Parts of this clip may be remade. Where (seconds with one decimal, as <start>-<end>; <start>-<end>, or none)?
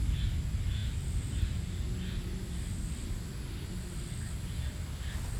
none